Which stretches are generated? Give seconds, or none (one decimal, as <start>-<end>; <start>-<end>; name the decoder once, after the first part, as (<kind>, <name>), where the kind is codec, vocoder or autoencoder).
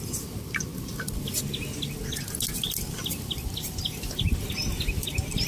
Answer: none